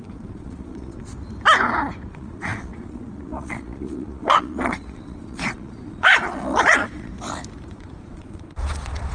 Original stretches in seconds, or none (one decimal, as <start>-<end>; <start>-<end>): 1.1-2.1; 7.1-7.7